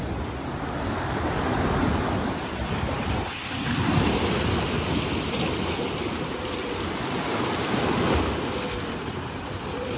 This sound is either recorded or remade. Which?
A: recorded